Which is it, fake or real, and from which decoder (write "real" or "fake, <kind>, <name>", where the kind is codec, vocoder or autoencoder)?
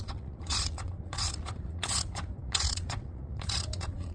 fake, vocoder, Vocos